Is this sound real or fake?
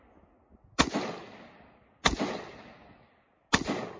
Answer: real